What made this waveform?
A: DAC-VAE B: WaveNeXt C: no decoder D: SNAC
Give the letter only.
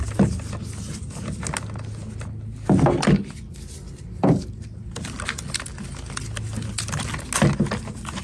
C